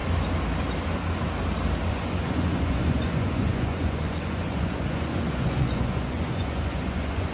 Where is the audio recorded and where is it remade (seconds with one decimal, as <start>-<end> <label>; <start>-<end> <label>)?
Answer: 0.0-1.9 recorded; 1.9-7.3 remade